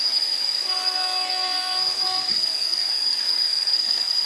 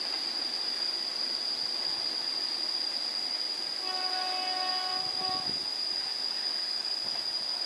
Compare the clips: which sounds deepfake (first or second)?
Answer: first